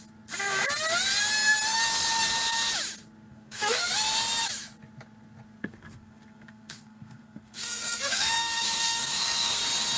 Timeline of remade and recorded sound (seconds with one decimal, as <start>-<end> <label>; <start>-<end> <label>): 0.0-3.3 recorded; 3.3-3.9 remade; 3.9-5.6 recorded; 5.6-9.6 remade; 9.6-10.0 recorded